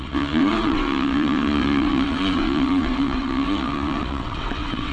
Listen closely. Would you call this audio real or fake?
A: fake